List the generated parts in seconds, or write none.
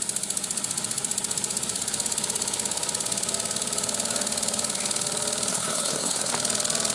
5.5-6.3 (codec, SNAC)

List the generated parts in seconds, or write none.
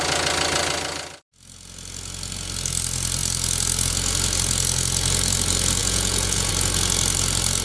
5.8-6.5 (vocoder, Vocos)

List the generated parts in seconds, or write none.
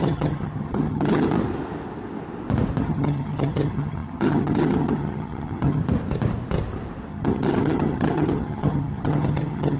0.0-1.3 (vocoder, HiFi-GAN); 2.8-5.8; 7.1-9.8